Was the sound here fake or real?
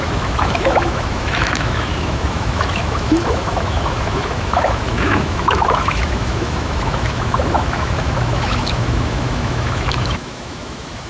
fake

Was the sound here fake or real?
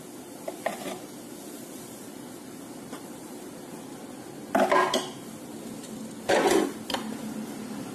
real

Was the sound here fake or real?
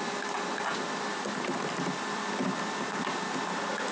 real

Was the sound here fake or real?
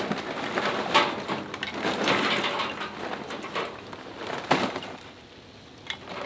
real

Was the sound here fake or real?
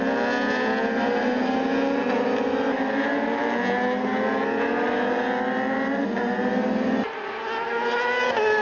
real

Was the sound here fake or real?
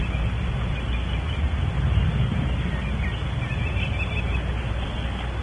real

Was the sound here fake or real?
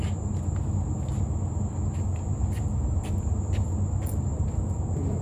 real